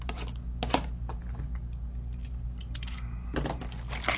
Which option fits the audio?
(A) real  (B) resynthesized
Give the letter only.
A